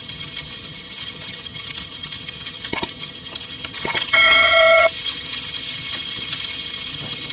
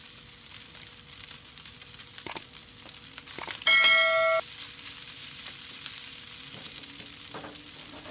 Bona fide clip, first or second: second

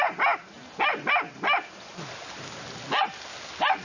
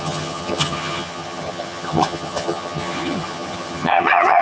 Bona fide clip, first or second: first